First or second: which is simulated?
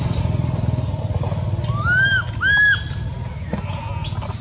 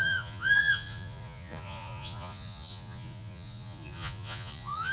second